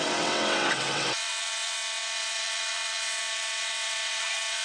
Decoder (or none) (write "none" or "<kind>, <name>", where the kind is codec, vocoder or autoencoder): vocoder, WaveNeXt